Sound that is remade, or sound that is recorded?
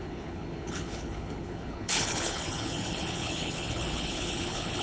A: remade